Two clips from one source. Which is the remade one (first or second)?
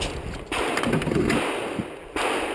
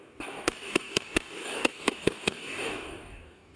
second